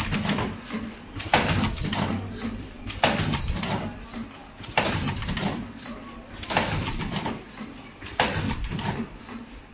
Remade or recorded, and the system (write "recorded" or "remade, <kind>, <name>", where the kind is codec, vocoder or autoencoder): remade, vocoder, BigVGAN v2